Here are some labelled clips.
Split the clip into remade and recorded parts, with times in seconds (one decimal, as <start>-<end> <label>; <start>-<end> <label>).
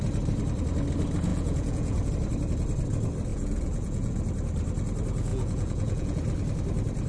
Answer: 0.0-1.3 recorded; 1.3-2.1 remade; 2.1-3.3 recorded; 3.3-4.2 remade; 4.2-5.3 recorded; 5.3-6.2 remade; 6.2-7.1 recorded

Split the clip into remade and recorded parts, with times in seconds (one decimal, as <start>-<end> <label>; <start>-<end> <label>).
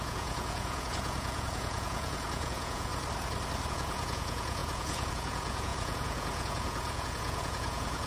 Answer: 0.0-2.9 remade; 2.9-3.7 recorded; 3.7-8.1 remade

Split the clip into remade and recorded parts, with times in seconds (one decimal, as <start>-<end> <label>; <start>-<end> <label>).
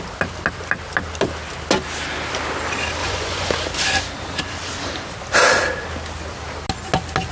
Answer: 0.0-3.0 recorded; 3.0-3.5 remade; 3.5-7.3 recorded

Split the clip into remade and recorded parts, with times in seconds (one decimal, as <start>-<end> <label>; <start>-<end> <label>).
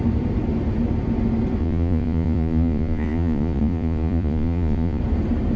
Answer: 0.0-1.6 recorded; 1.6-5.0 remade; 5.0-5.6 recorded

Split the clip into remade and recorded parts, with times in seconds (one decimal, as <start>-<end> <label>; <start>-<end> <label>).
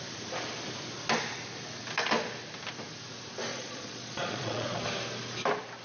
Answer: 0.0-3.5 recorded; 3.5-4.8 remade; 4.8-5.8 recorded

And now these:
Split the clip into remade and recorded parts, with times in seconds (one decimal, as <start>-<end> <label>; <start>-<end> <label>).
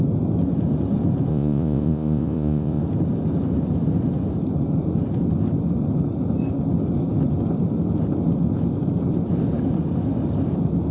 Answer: 0.0-1.3 recorded; 1.3-2.8 remade; 2.8-10.9 recorded